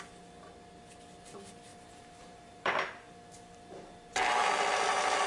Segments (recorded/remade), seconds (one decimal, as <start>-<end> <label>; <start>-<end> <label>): 0.0-1.7 recorded; 1.7-2.7 remade; 2.7-5.3 recorded